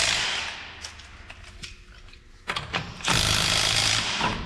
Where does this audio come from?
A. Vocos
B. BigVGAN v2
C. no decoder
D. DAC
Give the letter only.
C